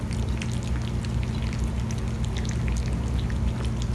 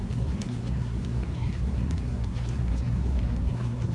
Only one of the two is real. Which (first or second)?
first